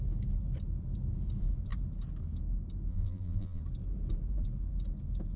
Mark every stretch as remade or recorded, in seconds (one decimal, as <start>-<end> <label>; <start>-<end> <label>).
0.0-2.9 recorded; 2.9-3.6 remade; 3.6-5.4 recorded